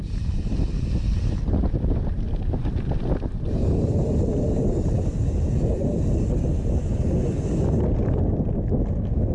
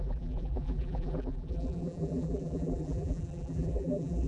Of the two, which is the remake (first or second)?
second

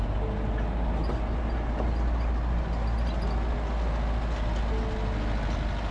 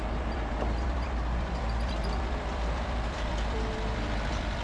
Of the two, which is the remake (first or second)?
second